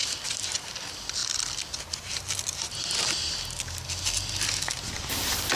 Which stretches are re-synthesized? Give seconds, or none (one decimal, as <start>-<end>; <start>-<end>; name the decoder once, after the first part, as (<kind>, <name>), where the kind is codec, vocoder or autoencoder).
0.0-0.6 (vocoder, BigVGAN v2)